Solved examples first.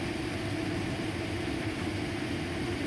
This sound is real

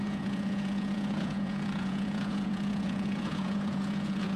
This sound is fake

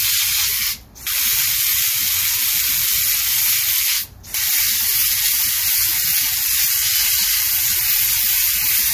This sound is real